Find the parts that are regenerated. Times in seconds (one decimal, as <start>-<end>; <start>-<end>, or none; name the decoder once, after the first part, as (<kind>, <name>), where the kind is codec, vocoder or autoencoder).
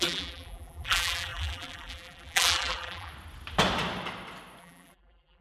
0.0-3.1 (vocoder, BigVGAN v2); 4.6-5.4